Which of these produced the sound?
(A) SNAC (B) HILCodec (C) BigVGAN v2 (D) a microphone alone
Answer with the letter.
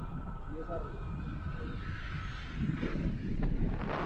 C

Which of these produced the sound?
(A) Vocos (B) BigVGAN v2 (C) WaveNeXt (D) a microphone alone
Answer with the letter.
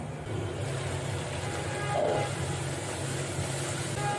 D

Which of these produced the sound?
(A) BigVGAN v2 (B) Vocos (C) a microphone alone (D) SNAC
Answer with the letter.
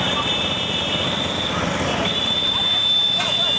C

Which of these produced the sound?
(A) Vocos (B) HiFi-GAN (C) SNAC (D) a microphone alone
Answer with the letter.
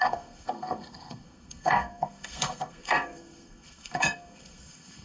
C